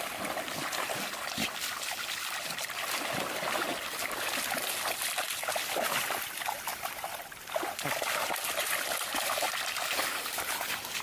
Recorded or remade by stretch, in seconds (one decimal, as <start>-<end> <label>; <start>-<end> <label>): 0.0-11.0 recorded

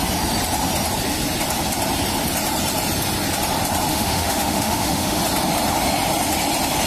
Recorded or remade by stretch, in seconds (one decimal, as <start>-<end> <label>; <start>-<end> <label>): 0.0-3.9 recorded; 3.9-5.2 remade; 5.2-6.9 recorded